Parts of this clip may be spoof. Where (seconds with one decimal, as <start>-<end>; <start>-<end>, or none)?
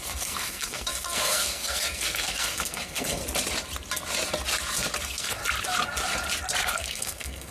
0.0-3.2; 5.0-5.4; 6.6-7.5